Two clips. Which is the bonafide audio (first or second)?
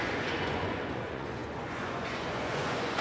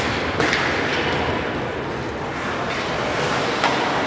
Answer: second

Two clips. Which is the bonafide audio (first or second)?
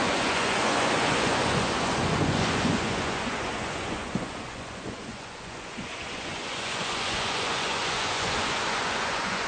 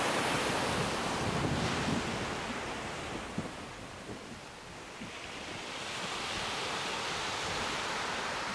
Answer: second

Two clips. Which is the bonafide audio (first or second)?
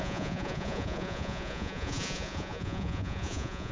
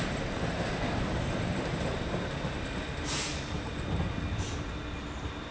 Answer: second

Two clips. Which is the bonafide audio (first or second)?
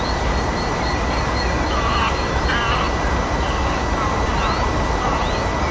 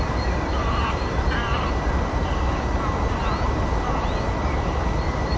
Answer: first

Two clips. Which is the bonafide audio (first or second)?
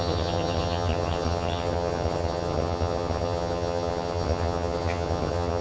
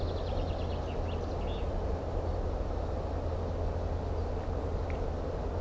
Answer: second